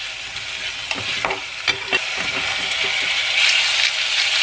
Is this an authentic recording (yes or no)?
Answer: yes